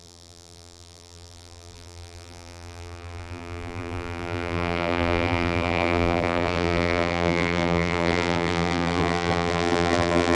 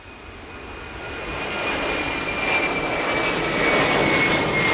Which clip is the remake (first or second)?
first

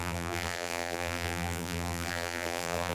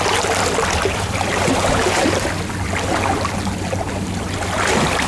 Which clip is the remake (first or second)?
first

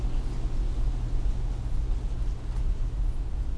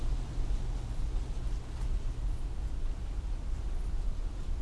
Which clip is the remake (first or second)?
second